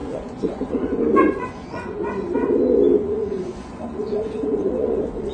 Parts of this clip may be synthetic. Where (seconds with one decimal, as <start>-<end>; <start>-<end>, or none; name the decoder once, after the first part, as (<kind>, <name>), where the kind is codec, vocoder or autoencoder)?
0.0-2.0 (vocoder, Vocos); 3.0-5.3